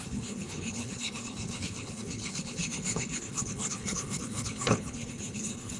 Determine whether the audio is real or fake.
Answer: fake